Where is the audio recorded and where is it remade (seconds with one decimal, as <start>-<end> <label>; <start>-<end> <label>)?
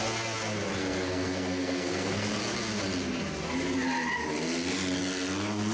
0.0-0.8 recorded; 0.8-2.4 remade; 2.4-5.7 recorded